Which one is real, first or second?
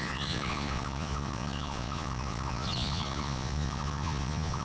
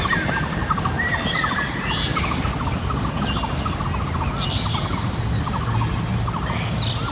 second